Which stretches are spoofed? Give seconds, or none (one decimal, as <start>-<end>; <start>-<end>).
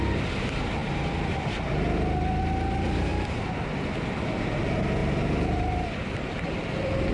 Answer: 5.0-7.1